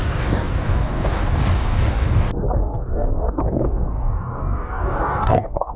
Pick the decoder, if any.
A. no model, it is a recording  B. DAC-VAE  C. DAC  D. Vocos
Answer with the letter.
C